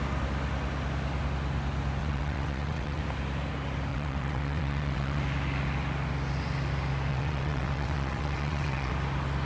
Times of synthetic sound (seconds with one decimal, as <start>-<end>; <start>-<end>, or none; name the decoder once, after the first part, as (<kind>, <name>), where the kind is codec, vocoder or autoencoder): 2.0-3.0 (vocoder, WaveNeXt); 3.9-5.2; 7.1-8.9